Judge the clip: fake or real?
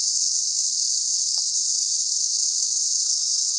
fake